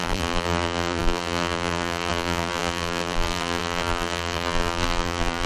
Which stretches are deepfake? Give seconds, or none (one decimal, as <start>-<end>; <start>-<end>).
0.0-5.5